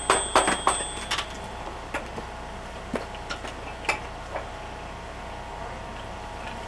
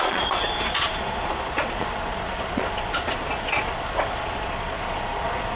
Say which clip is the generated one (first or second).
second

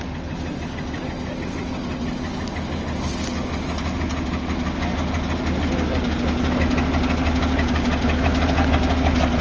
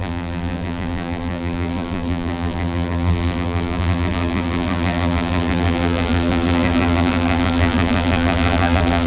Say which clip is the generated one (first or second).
second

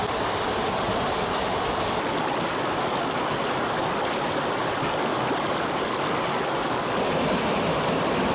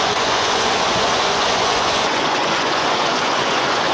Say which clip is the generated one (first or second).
second